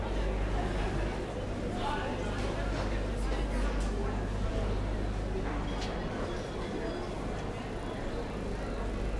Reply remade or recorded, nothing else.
recorded